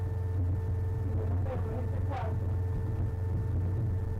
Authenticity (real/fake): real